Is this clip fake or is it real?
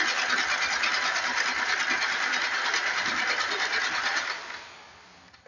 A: real